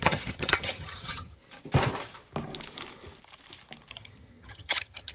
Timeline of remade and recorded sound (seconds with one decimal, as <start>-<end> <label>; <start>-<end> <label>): 0.0-1.4 remade; 1.4-3.9 recorded; 3.9-5.1 remade